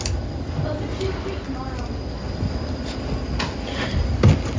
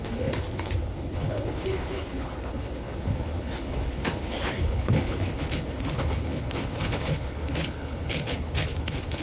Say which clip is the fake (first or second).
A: second